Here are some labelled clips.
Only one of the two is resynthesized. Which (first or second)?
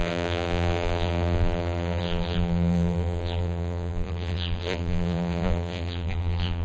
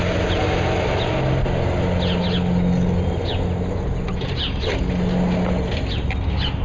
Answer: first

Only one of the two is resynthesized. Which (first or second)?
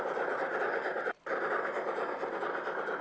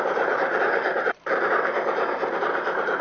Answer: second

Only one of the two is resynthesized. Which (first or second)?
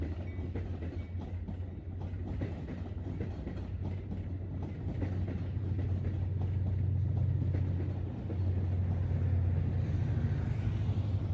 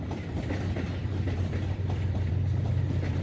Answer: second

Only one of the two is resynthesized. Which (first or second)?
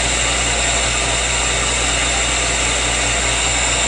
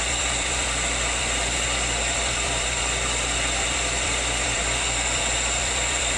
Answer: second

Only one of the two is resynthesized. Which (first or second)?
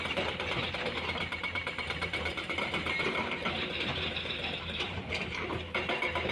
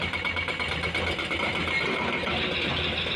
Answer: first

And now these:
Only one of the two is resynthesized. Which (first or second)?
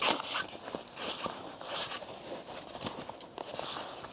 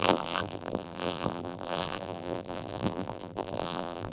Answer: second